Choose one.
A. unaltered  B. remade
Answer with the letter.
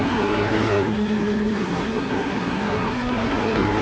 B